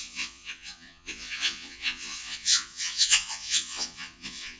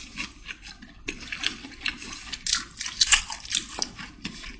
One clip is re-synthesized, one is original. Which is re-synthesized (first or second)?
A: first